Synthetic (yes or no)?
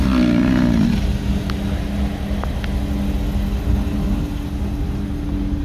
no